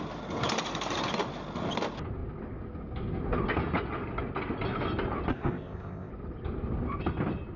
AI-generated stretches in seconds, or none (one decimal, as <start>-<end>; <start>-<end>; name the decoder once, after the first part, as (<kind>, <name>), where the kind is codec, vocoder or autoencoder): 5.3-6.1 (codec, ZipCodec)